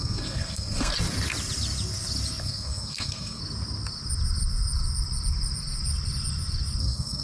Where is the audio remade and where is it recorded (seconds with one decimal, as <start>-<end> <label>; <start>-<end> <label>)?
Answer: 0.0-0.9 remade; 0.9-2.4 recorded; 2.4-3.4 remade; 3.4-6.8 recorded; 6.8-7.2 remade